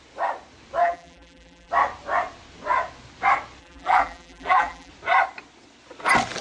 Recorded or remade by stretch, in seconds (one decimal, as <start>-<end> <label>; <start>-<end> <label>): 0.0-0.8 recorded; 0.8-1.7 remade; 1.7-3.6 recorded; 3.6-4.9 remade; 4.9-6.4 recorded